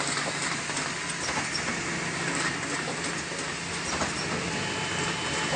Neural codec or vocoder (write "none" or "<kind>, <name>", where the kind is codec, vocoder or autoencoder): none